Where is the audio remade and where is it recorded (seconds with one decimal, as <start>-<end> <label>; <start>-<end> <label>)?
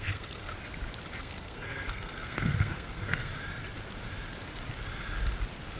0.0-0.5 remade; 0.5-1.2 recorded; 1.2-3.3 remade; 3.3-5.8 recorded